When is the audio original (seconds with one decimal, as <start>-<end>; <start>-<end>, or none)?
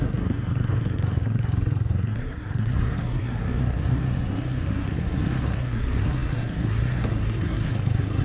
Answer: none